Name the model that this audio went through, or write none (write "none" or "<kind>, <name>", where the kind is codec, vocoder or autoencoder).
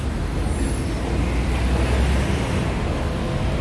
none